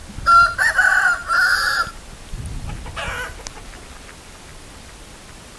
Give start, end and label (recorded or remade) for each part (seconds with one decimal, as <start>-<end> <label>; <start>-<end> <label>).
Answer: 0.0-5.6 recorded